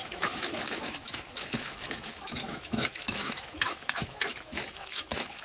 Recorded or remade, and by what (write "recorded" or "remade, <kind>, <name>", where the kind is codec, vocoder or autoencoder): remade, autoencoder, DAC-VAE